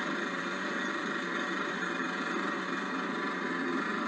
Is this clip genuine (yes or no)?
no